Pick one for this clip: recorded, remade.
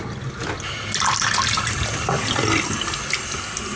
recorded